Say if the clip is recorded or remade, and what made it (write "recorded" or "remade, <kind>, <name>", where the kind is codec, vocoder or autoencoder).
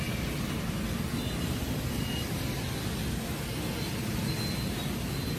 recorded